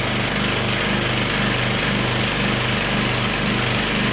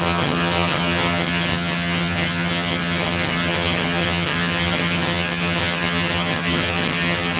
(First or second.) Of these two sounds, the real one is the first